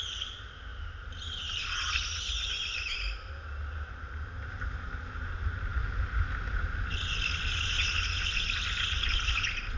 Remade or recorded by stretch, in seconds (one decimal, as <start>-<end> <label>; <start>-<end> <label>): 0.0-9.8 recorded